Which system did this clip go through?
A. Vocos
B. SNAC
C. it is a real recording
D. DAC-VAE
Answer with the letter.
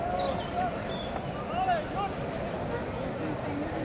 C